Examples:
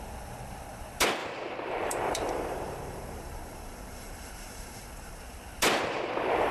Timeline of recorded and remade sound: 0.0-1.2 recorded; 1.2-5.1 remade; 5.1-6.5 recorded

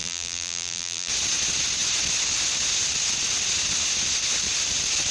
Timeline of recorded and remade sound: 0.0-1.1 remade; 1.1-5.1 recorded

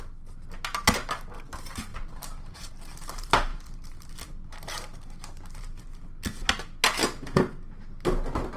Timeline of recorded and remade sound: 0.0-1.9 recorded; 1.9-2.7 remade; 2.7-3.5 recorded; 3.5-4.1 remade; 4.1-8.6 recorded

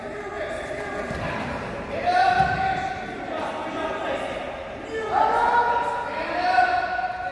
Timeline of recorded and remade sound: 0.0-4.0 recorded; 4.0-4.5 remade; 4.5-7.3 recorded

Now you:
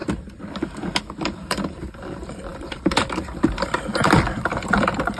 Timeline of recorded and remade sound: 0.0-1.0 recorded; 1.0-5.2 remade

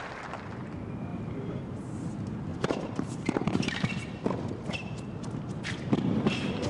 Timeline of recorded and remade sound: 0.0-1.1 recorded; 1.1-1.8 remade; 1.8-2.5 recorded; 2.5-5.7 remade; 5.7-6.7 recorded